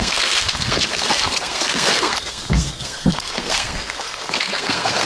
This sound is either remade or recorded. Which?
remade